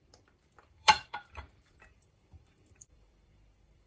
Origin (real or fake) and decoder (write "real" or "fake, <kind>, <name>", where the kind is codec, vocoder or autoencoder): fake, vocoder, BigVGAN v2